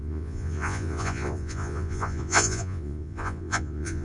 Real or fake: fake